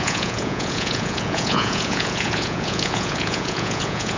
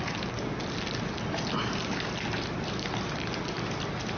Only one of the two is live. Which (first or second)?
second